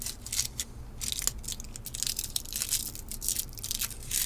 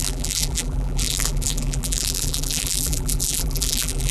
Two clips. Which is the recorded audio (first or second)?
first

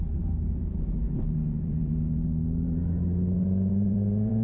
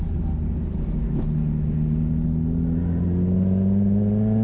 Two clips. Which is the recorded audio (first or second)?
second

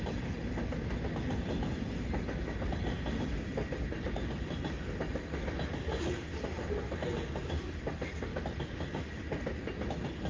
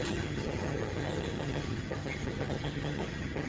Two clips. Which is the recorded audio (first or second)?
first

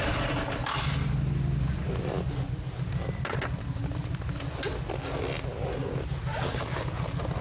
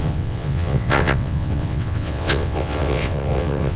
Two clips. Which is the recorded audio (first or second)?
first